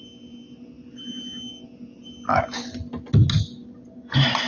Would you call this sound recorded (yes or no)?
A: yes